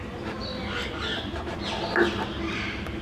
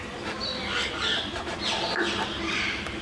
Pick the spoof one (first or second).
second